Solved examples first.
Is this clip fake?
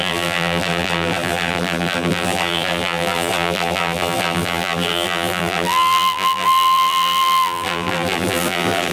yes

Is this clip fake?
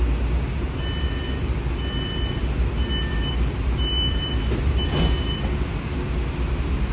no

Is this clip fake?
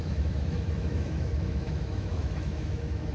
yes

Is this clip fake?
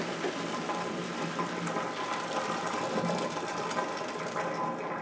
no